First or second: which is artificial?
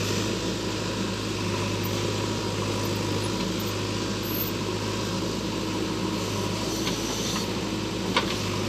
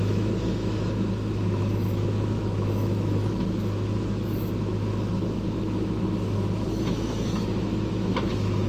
second